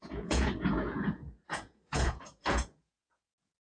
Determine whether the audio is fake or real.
fake